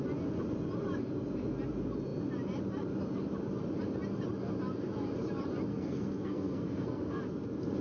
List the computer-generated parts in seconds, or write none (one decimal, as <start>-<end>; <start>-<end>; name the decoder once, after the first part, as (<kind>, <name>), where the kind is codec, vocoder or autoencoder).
5.7-7.2 (codec, SNAC)